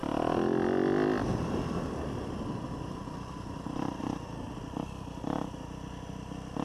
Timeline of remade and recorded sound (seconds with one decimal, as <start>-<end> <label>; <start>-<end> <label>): 0.0-6.6 recorded

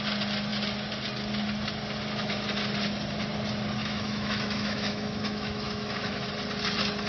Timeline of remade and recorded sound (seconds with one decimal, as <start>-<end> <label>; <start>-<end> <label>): 0.0-3.8 recorded; 3.8-6.3 remade; 6.3-7.1 recorded